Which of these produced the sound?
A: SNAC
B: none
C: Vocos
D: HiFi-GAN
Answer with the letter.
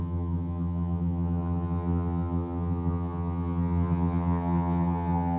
D